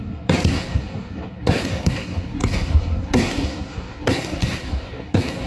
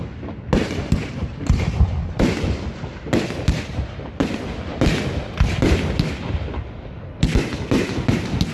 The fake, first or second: first